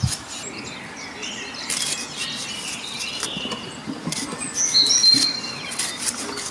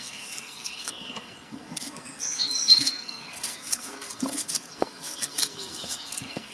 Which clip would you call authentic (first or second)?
first